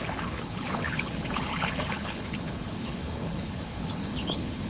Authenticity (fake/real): fake